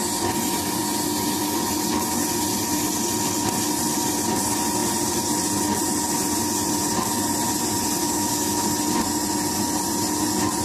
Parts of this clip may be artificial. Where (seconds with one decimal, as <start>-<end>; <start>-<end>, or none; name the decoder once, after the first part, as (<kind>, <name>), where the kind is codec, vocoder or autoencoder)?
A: 8.0-8.6 (autoencoder, DAC-VAE)